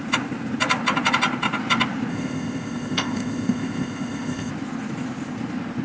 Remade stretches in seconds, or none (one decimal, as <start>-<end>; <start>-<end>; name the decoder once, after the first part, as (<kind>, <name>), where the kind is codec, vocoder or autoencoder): 2.1-4.5 (codec, ZipCodec)